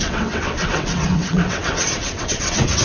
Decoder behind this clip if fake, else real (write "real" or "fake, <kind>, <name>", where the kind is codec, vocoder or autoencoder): fake, vocoder, WaveNeXt